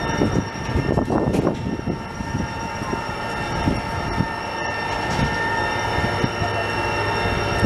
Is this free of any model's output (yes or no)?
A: yes